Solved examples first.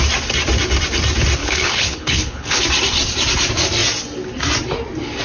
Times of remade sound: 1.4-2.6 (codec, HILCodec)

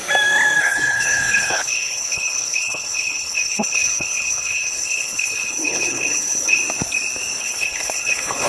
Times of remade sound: 0.6-6.6 (codec, HILCodec); 7.4-8.5

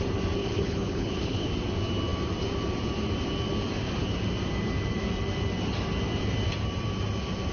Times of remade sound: 0.4-1.5 (codec, HILCodec)

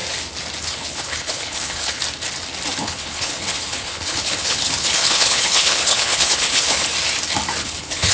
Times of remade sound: 0.6-2.0 (codec, HILCodec); 2.8-6.9; 7.6-8.1

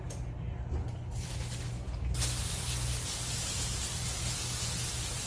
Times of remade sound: 0.8-1.3 (codec, HILCodec)

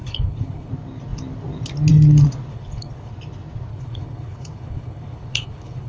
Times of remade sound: 0.0-0.7 (codec, HILCodec); 2.5-3.1; 3.7-5.9